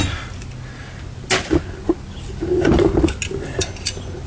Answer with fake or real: real